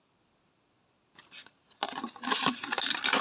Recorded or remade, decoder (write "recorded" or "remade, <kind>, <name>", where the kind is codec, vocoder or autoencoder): recorded